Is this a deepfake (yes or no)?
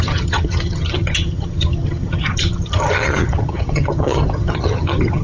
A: yes